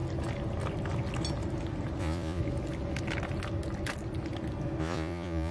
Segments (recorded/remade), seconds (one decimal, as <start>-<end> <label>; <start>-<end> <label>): 0.0-2.0 recorded; 2.0-2.4 remade; 2.4-4.8 recorded; 4.8-5.5 remade